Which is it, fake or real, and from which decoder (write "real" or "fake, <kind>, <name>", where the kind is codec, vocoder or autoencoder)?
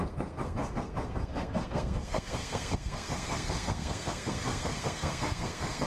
fake, codec, SNAC